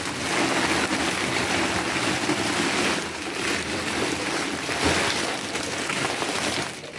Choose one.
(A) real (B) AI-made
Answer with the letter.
A